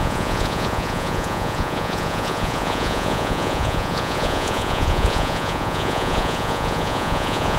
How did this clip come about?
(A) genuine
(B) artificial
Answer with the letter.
B